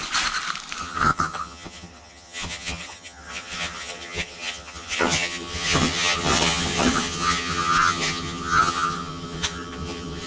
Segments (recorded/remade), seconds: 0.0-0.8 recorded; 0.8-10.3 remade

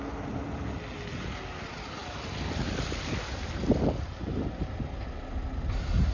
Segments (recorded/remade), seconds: 0.0-6.1 recorded

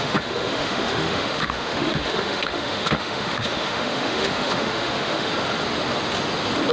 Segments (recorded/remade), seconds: 0.0-5.3 remade; 5.3-6.7 recorded